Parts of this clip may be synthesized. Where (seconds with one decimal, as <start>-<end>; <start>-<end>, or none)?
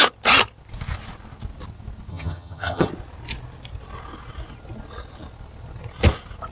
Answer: 2.1-2.9